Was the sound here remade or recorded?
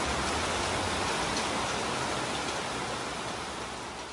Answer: recorded